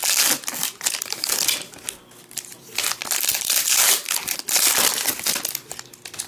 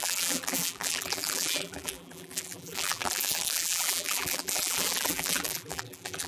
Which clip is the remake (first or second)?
second